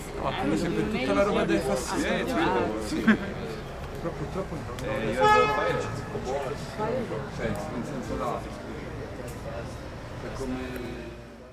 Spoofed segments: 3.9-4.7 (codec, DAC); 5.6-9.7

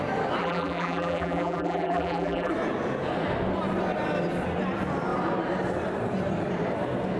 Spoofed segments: 0.4-2.5 (vocoder, BigVGAN v2)